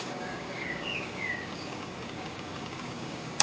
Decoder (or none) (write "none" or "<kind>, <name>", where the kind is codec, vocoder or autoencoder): codec, DAC